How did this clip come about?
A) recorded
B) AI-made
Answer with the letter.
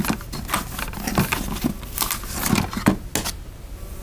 A